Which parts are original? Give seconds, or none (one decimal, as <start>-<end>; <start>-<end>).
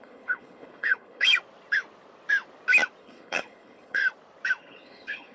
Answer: 1.3-3.0; 4.0-4.6